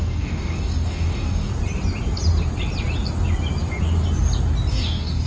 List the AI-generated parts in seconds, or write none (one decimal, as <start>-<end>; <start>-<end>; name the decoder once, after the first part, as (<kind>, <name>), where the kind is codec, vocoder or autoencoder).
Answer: 0.0-1.5 (codec, DAC); 4.7-5.3